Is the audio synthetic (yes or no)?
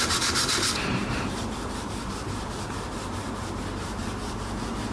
yes